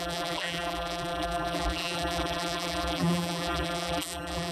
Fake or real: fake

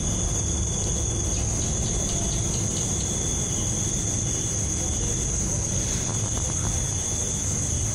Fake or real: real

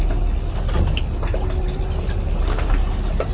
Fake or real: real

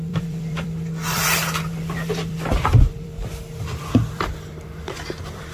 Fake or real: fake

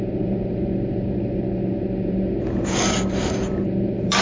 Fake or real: fake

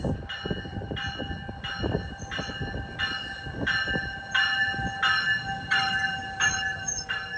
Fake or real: real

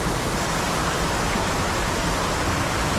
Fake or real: real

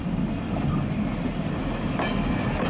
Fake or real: real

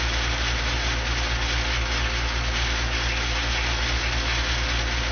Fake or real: real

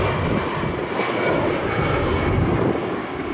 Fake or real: real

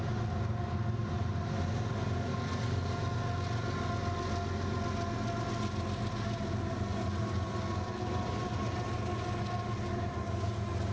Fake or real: real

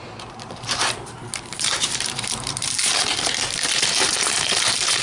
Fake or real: fake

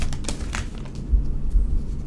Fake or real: real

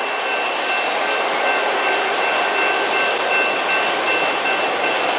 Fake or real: real